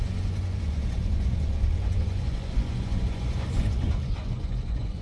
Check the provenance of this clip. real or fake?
fake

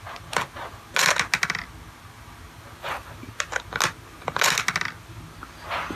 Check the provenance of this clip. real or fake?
real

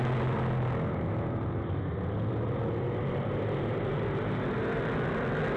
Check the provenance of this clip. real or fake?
real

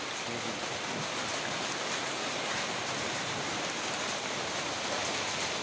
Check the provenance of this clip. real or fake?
real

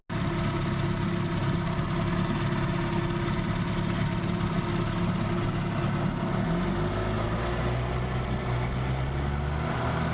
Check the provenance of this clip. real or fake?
real